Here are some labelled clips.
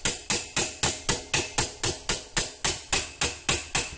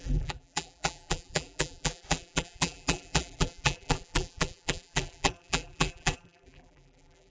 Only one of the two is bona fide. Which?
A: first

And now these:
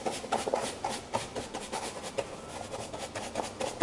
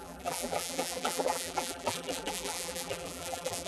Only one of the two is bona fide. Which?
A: first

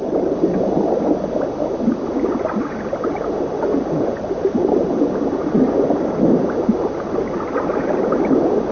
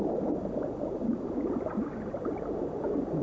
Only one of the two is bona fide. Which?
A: first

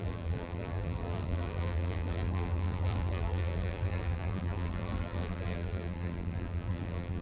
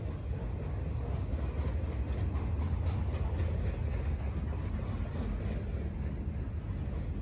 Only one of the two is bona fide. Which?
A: second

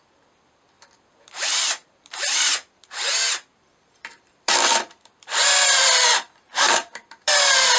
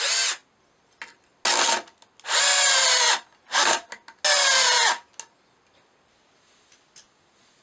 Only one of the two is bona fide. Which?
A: second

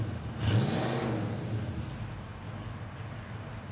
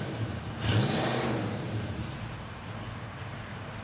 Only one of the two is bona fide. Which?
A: first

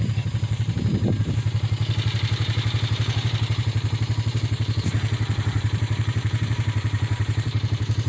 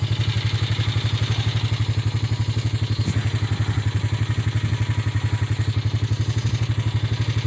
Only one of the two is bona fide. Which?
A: second